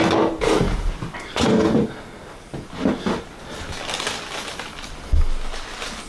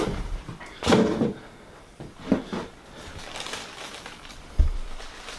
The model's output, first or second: second